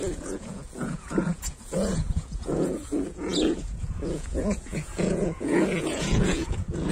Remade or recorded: remade